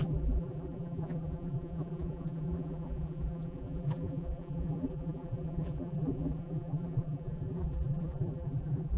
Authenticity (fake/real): fake